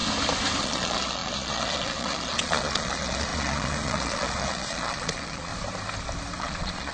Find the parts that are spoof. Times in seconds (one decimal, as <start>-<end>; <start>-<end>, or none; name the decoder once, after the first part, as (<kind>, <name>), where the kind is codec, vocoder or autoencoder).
0.6-5.5 (vocoder, Vocos); 6.4-6.9